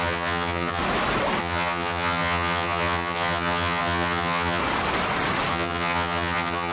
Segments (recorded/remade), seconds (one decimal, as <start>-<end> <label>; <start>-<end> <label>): 0.0-0.8 remade; 0.8-1.4 recorded; 1.4-4.6 remade; 4.6-5.5 recorded; 5.5-6.7 remade